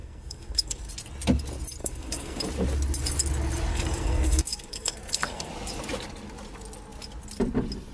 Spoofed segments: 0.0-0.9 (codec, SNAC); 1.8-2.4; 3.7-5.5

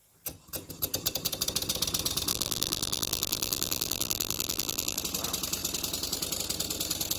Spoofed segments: 2.3-5.0 (vocoder, BigVGAN v2)

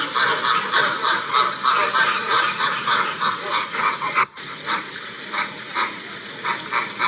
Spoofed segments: 2.2-6.5 (vocoder, Vocos)

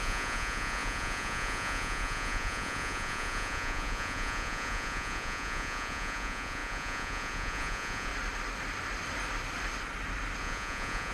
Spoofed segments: 0.0-8.1 (vocoder, Vocos); 10.4-11.1

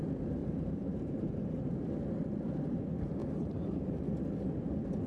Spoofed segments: 0.4-1.9 (vocoder, BigVGAN v2); 3.2-3.9

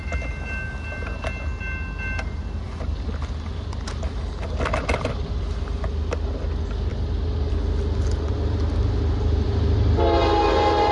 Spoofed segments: none

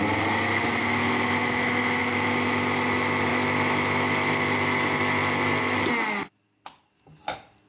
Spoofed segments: 0.8-2.0 (autoencoder, DAC-VAE)

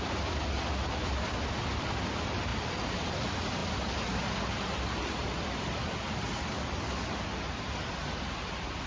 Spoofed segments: 0.0-8.9 (vocoder, BigVGAN v2)